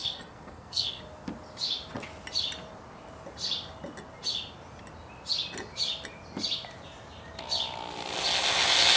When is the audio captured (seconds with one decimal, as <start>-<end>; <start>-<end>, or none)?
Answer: 1.0-9.0